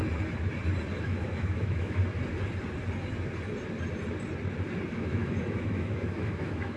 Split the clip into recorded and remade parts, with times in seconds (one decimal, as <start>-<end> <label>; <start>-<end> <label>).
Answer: 0.0-1.0 recorded; 1.0-2.0 remade; 2.0-4.9 recorded; 4.9-6.8 remade

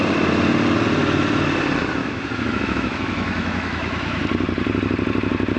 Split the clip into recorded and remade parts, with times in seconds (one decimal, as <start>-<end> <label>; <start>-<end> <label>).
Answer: 0.0-2.0 recorded; 2.0-4.2 remade; 4.2-5.6 recorded

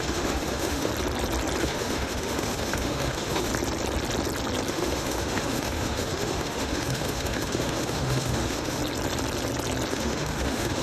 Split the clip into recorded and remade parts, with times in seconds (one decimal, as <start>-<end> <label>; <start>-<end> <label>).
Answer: 0.0-0.9 remade; 0.9-1.6 recorded; 1.6-3.5 remade; 3.5-4.7 recorded; 4.7-8.8 remade; 8.8-9.9 recorded; 9.9-10.8 remade

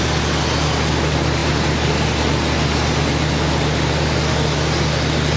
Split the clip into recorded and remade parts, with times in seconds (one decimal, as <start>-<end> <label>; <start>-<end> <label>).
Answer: 0.0-5.4 recorded